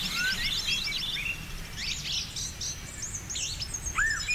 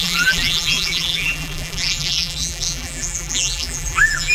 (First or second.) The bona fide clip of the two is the first